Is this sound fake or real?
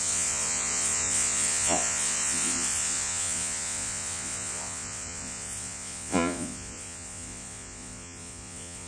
fake